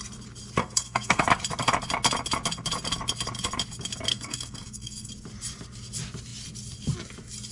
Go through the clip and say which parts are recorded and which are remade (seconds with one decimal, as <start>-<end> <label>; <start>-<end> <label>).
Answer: 0.0-0.6 recorded; 0.6-1.2 remade; 1.2-4.1 recorded; 4.1-5.1 remade; 5.1-7.5 recorded